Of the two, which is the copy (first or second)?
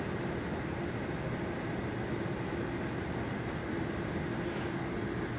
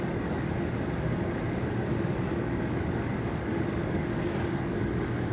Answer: second